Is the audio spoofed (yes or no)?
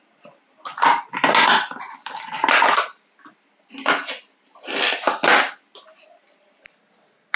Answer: no